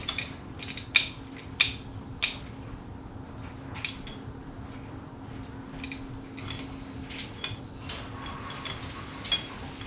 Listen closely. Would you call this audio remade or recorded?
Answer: recorded